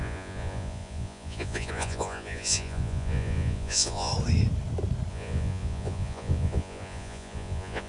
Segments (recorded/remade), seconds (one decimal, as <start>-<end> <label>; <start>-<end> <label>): 0.0-4.1 remade; 4.1-5.1 recorded; 5.1-7.9 remade